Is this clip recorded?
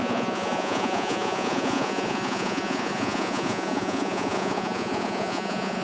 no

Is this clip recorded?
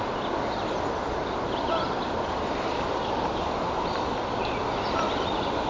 yes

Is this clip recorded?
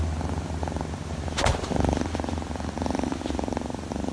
yes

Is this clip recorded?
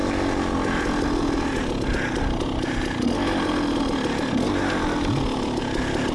yes